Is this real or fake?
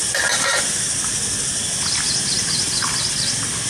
real